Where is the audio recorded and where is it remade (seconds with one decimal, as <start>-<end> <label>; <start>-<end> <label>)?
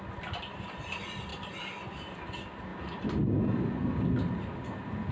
0.0-5.1 recorded